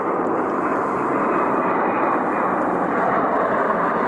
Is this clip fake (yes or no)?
yes